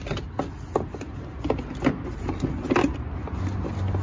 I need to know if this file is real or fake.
real